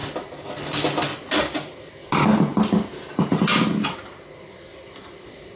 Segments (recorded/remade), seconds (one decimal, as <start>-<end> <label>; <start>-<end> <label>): 0.0-5.6 recorded